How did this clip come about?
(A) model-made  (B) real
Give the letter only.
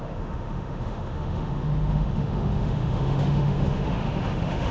A